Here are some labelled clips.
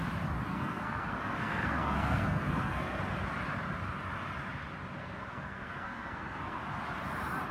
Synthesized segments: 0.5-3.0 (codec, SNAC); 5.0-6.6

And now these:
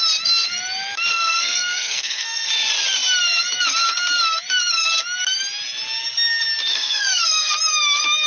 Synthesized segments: 1.1-2.5 (codec, SNAC); 6.7-7.5